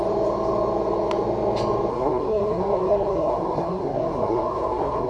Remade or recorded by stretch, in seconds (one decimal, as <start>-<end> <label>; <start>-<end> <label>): 0.0-1.9 recorded; 1.9-5.1 remade